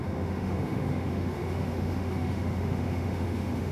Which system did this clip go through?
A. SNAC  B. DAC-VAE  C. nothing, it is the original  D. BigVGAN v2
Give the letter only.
B